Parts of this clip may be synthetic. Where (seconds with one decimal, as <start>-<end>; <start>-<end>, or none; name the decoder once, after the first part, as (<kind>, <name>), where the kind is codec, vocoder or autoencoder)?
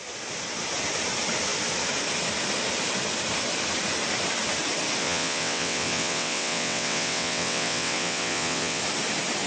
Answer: 5.0-8.8 (vocoder, WaveNeXt)